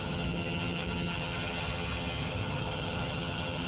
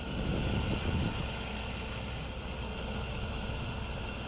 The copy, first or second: first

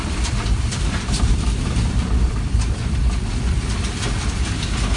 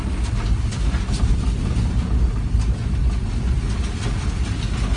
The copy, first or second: first